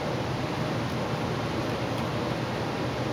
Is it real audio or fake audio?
real